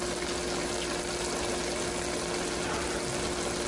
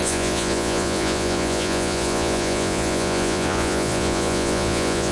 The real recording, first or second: first